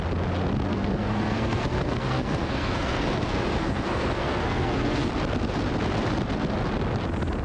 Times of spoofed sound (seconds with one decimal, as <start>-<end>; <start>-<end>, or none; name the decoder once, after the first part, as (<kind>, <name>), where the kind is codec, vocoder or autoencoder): 0.7-5.1 (codec, SNAC)